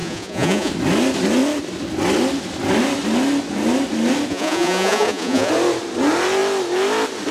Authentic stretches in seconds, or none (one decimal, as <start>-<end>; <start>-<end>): 0.7-4.3; 5.5-7.3